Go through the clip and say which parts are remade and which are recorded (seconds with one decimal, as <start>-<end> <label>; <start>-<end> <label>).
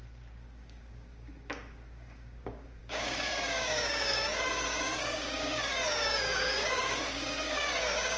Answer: 0.0-8.2 remade